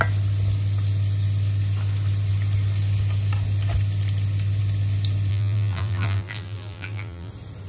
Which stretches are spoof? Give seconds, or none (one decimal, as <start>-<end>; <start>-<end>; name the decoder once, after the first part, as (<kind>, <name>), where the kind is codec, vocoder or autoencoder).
5.3-7.3 (vocoder, BigVGAN v2)